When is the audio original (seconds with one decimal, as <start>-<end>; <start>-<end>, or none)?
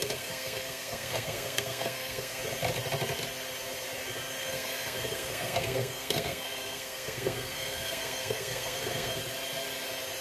2.4-4.4; 9.2-10.2